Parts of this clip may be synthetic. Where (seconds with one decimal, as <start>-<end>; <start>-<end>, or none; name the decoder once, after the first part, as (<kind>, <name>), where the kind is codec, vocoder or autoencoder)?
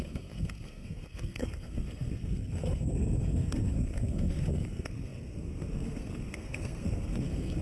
0.0-7.6 (codec, SNAC)